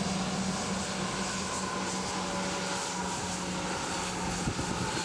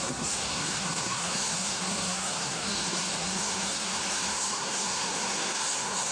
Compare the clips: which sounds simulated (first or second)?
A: second